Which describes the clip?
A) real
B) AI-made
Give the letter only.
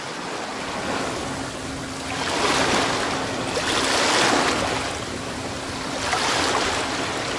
A